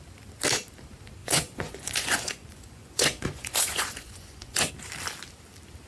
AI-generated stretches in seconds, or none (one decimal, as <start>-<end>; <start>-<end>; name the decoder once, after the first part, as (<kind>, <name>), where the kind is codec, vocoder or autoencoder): 1.2-4.7 (vocoder, Vocos)